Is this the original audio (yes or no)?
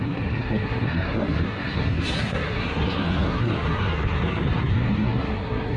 no